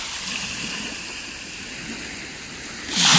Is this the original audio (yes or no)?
yes